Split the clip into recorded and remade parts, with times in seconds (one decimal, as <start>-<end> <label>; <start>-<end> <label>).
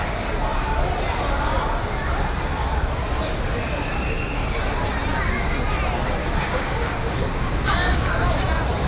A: 0.0-6.2 recorded; 6.2-8.4 remade; 8.4-8.9 recorded